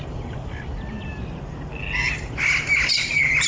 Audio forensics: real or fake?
real